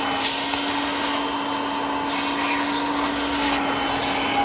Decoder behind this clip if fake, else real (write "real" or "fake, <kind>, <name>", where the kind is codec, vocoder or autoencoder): real